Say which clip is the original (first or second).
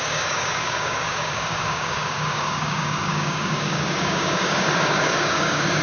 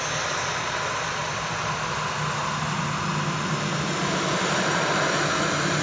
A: second